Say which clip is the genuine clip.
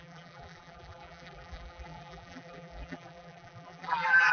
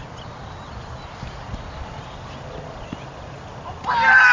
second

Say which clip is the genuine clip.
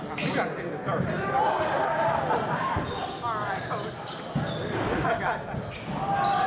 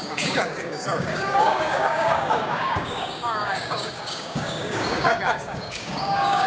first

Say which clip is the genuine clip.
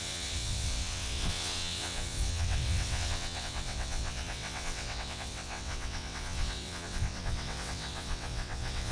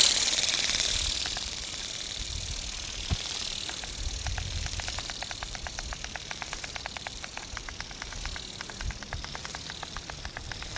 second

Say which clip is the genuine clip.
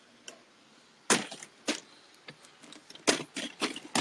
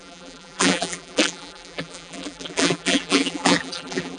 first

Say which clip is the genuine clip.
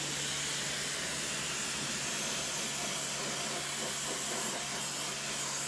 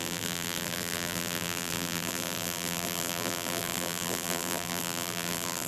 first